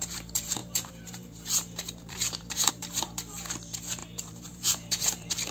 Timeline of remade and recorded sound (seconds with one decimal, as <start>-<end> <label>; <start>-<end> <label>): 0.0-5.5 remade